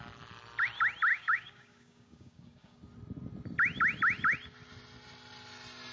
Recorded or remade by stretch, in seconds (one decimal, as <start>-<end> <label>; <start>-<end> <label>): 0.0-1.1 recorded; 1.1-2.8 remade; 2.8-5.9 recorded